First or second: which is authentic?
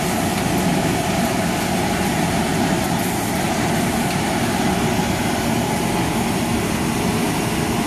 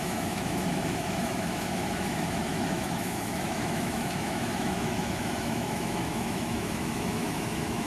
first